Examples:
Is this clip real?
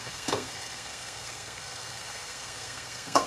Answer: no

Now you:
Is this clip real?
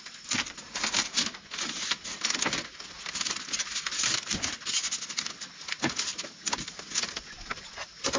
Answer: yes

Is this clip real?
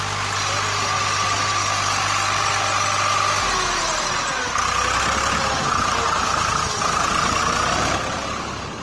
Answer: yes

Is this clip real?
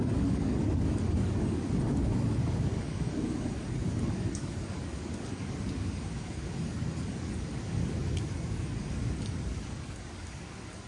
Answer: no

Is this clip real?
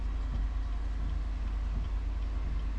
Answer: yes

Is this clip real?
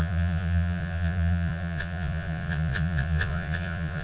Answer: no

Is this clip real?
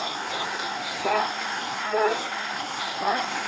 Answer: no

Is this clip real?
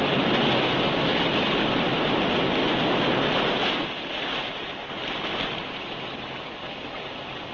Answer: yes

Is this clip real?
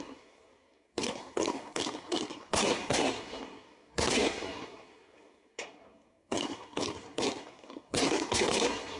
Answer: no